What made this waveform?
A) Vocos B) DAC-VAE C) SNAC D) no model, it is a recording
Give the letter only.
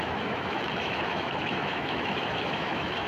B